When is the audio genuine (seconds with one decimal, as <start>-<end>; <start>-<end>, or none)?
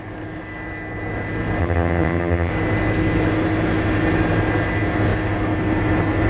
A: 0.0-1.6; 2.5-6.3